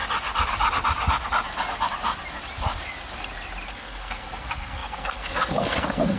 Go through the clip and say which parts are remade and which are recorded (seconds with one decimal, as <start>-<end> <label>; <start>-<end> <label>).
0.0-3.7 recorded; 3.7-6.2 remade